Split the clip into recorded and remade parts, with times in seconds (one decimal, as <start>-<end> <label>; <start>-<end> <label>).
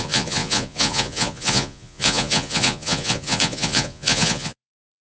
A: 0.0-5.0 remade